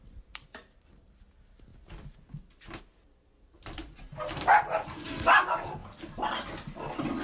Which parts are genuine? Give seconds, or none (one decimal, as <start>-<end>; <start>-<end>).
0.0-7.2